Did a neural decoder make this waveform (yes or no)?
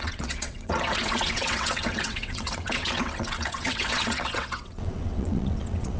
yes